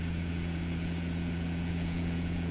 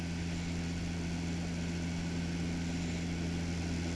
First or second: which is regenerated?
first